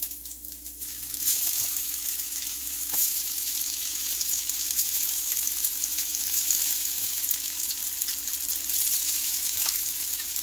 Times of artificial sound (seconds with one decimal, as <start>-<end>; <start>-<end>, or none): 0.0-7.8; 9.0-10.4